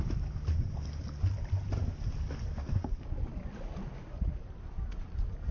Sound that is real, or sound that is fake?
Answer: real